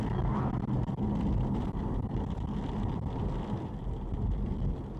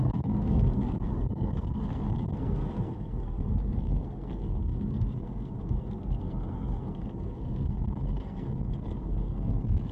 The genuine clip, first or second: first